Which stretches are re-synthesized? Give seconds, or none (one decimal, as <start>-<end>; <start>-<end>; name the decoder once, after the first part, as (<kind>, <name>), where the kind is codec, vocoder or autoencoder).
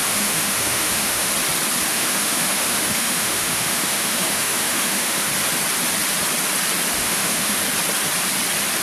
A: 0.0-1.3 (autoencoder, DAC-VAE); 1.9-5.3; 7.0-7.6